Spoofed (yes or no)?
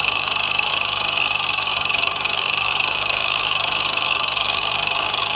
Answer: yes